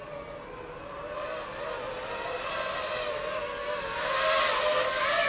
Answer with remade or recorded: recorded